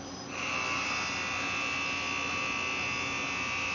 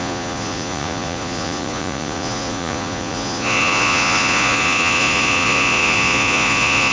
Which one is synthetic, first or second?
second